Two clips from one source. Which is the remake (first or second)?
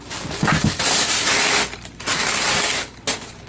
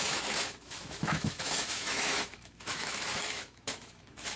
second